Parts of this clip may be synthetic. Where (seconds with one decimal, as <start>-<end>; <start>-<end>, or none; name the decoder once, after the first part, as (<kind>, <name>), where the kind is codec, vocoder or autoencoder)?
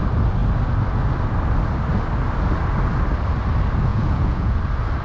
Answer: 3.9-4.6 (vocoder, Vocos)